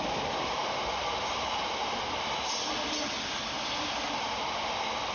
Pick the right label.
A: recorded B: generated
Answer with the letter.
A